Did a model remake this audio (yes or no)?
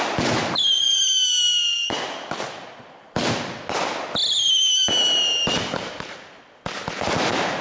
no